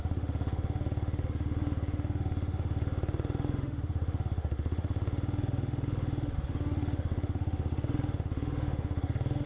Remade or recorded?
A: remade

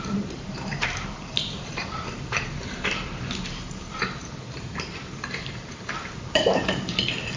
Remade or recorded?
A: remade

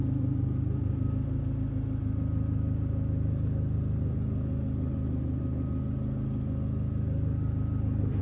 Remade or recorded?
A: recorded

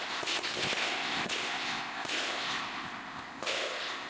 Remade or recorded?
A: remade